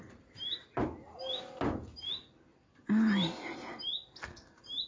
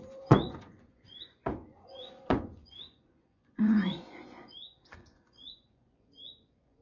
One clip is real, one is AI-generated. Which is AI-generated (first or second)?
second